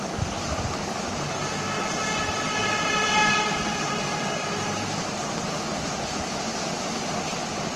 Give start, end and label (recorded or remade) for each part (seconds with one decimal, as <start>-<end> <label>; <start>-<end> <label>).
0.0-7.8 recorded